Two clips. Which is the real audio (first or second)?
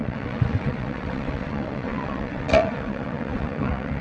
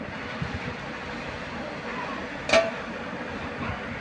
second